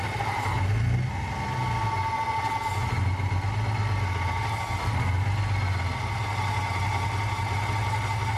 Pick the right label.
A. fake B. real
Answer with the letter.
B